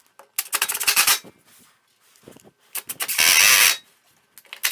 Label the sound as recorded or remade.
recorded